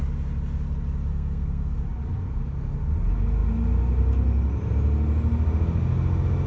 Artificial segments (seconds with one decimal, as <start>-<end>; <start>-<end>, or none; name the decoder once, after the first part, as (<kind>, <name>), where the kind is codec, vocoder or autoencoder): 1.1-1.8 (codec, SNAC)